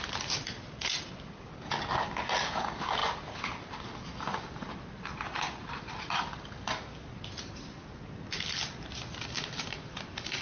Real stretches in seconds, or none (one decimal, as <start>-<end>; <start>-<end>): 0.0-10.4